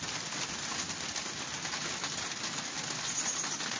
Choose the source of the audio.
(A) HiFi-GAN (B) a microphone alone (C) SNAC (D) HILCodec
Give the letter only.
B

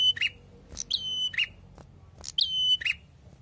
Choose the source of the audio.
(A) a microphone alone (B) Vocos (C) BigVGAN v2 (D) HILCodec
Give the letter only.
A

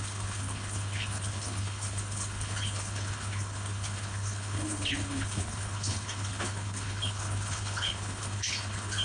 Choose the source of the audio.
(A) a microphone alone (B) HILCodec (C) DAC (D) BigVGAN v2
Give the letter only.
B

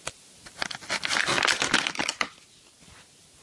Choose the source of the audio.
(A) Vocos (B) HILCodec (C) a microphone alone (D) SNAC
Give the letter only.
C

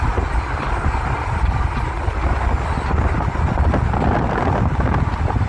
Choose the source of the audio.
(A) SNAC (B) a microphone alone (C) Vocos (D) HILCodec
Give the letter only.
B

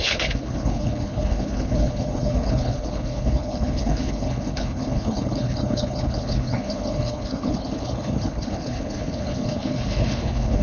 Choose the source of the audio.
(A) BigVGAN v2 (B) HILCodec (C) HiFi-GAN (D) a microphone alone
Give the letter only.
B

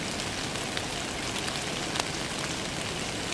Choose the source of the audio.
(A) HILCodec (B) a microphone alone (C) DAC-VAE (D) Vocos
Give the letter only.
B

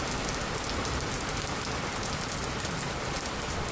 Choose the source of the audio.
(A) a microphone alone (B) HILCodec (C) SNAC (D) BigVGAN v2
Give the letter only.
A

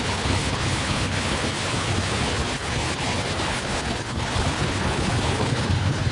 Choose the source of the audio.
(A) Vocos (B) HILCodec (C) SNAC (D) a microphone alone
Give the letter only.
B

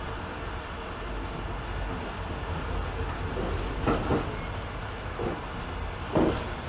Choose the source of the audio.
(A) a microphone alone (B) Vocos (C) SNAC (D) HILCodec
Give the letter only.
A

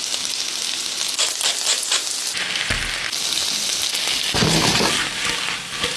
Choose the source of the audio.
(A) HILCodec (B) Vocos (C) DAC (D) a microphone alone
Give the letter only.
D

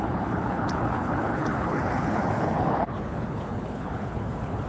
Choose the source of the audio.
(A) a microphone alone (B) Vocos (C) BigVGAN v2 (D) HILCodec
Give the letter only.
D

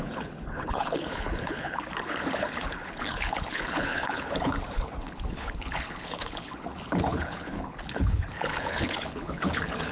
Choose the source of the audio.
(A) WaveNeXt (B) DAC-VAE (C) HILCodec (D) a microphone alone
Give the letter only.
C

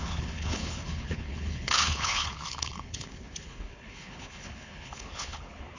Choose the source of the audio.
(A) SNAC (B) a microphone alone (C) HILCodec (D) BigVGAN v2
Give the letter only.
C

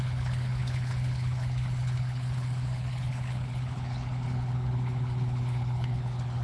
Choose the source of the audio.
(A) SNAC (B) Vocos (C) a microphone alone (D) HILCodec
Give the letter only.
D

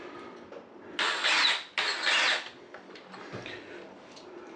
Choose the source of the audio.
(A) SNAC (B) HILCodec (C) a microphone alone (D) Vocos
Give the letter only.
C